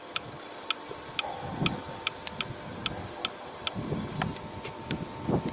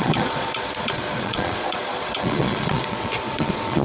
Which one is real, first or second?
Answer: first